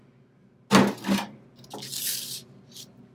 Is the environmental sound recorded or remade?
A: recorded